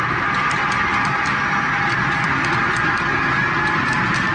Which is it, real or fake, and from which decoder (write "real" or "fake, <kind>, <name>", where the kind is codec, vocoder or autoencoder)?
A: real